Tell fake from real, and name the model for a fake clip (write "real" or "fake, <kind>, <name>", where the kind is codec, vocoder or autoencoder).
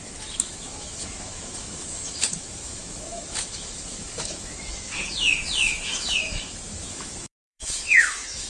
fake, autoencoder, DAC-VAE